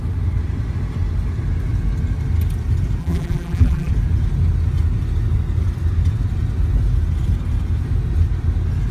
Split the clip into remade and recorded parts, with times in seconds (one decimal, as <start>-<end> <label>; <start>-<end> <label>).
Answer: 0.0-3.0 recorded; 3.0-3.9 remade; 3.9-8.9 recorded